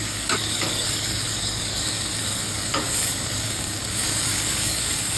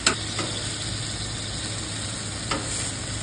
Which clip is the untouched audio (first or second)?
second